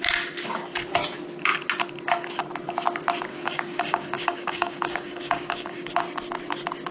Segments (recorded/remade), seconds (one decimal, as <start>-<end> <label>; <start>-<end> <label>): 0.0-3.3 recorded; 3.3-5.9 remade; 5.9-6.9 recorded